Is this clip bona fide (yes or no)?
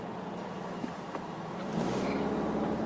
no